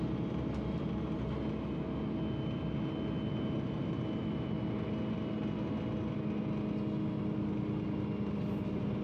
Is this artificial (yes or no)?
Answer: no